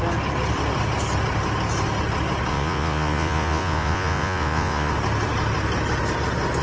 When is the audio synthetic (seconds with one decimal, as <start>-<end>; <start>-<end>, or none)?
2.5-4.9